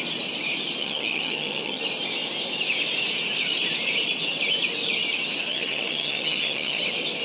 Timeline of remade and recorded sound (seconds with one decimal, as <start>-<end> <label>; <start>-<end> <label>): 0.0-0.8 recorded; 0.8-1.8 remade; 1.8-5.5 recorded; 5.5-6.8 remade; 6.8-7.2 recorded